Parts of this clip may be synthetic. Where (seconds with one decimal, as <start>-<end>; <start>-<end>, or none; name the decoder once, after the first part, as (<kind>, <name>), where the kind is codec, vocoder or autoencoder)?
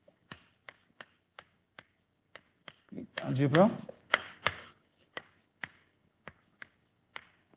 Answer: 0.0-7.6 (codec, DAC)